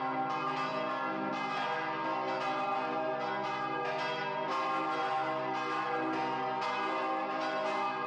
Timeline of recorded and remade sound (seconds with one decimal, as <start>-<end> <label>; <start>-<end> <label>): 0.0-8.1 recorded